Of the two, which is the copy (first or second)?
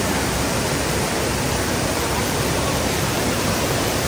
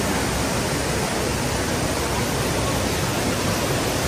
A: first